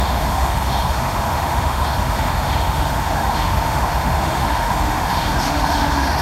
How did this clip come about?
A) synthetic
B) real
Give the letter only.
A